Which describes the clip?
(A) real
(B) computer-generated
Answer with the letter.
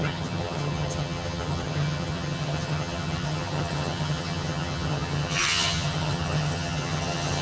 B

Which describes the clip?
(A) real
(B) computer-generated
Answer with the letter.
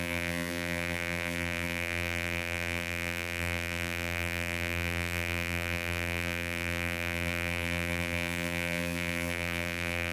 B